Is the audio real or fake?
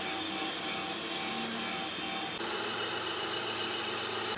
real